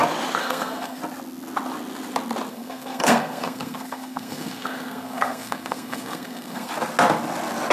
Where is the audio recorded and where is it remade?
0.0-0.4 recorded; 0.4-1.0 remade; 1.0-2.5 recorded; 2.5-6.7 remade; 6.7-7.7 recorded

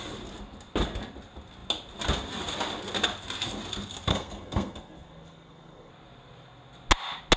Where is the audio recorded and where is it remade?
0.0-4.1 recorded; 4.1-5.9 remade; 5.9-7.4 recorded

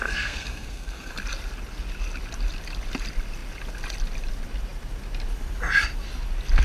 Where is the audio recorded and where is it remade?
0.0-1.1 remade; 1.1-6.6 recorded

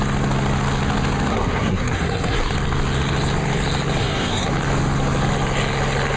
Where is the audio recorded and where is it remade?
0.0-1.3 recorded; 1.3-2.5 remade; 2.5-4.0 recorded; 4.0-4.5 remade; 4.5-6.2 recorded

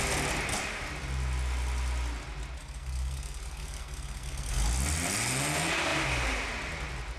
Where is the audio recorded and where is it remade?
0.0-2.6 recorded; 2.6-4.6 remade; 4.6-7.2 recorded

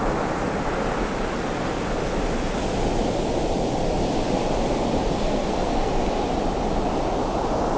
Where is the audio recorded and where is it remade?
0.0-5.2 recorded; 5.2-5.9 remade; 5.9-7.8 recorded

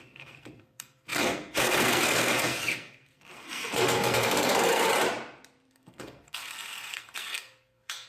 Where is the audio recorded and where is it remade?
0.0-4.9 remade; 4.9-5.7 recorded; 5.7-8.1 remade

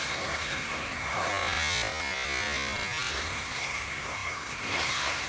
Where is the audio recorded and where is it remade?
0.0-1.3 remade; 1.3-3.1 recorded; 3.1-5.3 remade